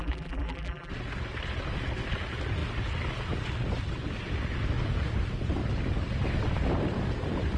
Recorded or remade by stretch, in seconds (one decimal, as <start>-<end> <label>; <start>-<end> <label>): 0.0-0.9 remade; 0.9-7.6 recorded